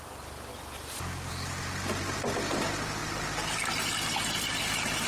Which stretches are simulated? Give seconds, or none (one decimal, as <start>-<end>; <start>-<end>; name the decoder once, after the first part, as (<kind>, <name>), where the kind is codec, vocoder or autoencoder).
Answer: none